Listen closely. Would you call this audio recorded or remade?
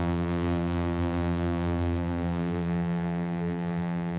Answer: remade